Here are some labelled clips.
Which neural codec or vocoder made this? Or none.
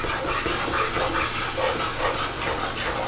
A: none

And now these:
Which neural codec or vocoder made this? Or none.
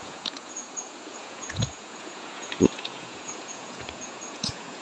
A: vocoder, Vocos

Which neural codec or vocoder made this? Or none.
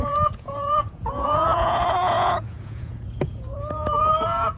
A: vocoder, Vocos